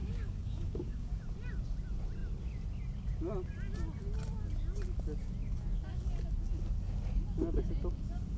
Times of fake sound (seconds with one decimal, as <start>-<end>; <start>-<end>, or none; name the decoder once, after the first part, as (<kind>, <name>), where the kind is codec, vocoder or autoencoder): 0.0-1.2 (codec, DAC)